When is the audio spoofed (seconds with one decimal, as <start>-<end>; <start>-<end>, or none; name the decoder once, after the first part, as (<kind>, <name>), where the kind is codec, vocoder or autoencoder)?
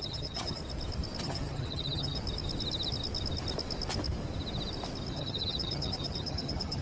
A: 0.0-0.6 (vocoder, HiFi-GAN); 1.2-2.2; 5.1-6.8